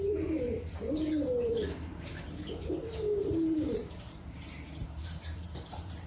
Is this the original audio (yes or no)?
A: no